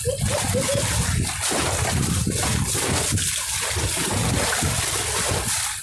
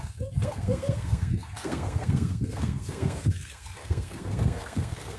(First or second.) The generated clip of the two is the second